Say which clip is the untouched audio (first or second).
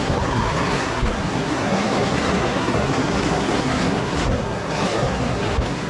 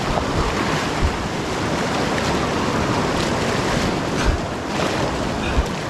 second